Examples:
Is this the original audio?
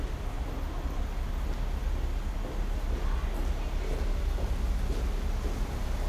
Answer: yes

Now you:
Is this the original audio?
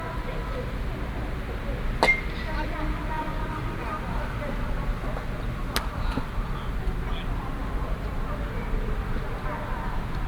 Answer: yes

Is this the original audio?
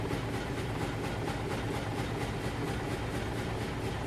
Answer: yes